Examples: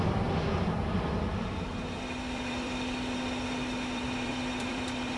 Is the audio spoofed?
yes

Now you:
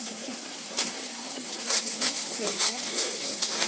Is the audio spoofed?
yes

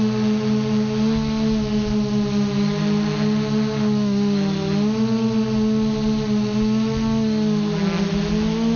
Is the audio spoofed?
no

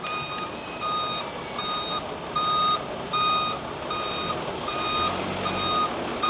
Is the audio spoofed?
no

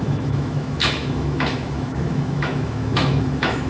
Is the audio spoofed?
yes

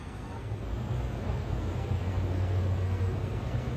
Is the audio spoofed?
yes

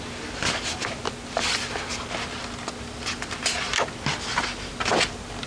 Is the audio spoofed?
no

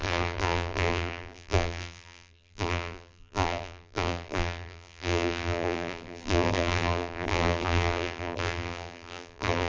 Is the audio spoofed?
yes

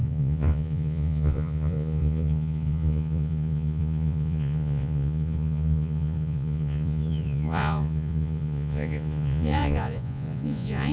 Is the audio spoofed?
yes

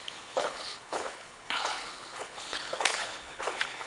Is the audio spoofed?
yes